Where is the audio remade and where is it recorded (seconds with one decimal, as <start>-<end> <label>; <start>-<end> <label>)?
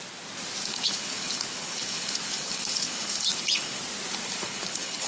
0.0-0.7 recorded; 0.7-3.8 remade; 3.8-4.2 recorded; 4.2-5.1 remade